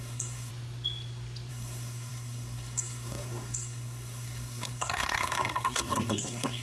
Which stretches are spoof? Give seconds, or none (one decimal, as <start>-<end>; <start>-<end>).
0.0-0.5; 1.5-6.6